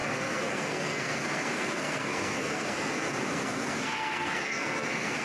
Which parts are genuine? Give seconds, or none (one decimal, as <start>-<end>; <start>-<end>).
none